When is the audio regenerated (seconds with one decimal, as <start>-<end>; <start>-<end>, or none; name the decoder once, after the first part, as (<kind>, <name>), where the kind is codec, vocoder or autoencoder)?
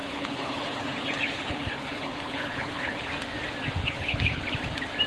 0.0-3.1 (codec, HILCodec); 3.8-4.4